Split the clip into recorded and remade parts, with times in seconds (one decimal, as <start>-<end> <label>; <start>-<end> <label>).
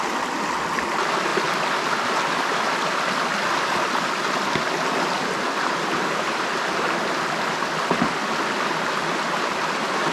0.0-10.1 recorded